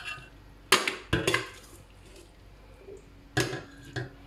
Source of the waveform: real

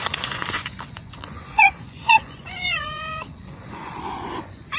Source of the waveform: fake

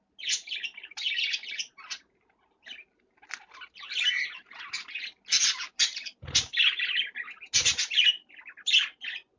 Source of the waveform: real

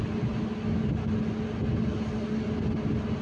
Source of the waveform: real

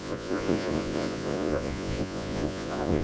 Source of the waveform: fake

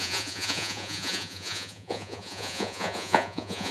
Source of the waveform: fake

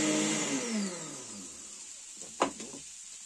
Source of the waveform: real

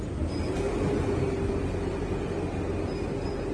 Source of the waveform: real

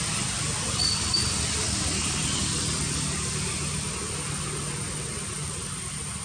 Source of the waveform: real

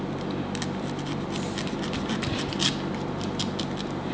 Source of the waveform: real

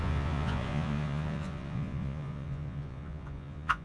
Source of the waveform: fake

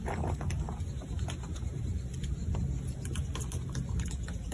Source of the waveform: real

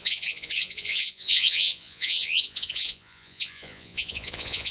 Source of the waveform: fake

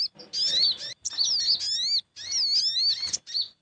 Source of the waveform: real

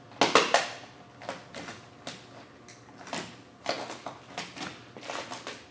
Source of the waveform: real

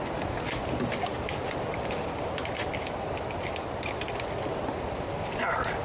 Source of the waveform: real